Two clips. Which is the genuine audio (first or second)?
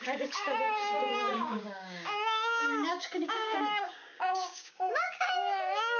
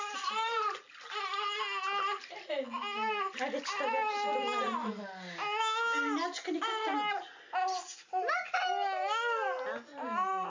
second